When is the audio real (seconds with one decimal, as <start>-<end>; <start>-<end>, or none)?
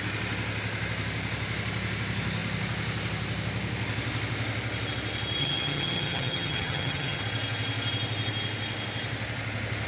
0.0-5.4; 7.2-9.9